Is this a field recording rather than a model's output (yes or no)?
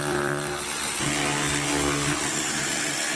yes